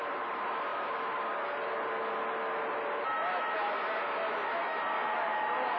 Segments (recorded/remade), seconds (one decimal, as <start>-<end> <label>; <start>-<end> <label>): 0.0-5.0 recorded; 5.0-5.8 remade